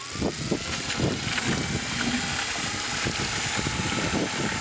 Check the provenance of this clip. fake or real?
real